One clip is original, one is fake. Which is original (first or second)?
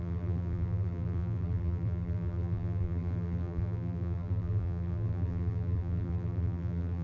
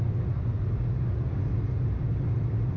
second